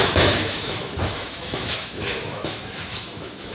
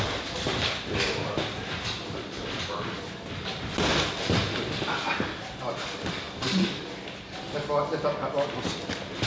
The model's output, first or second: first